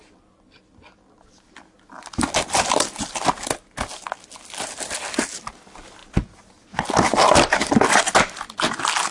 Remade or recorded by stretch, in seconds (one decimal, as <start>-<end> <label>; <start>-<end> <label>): 0.0-9.1 recorded